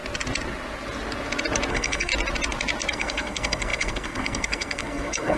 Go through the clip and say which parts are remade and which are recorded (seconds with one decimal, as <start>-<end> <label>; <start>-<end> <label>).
0.0-1.7 recorded; 1.7-2.1 remade; 2.1-2.9 recorded; 2.9-5.4 remade